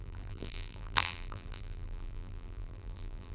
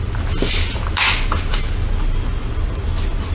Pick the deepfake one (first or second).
first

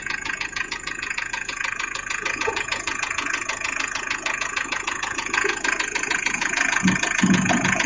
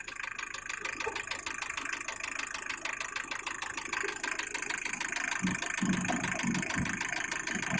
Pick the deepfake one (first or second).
first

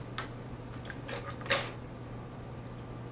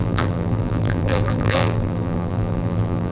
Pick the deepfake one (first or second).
second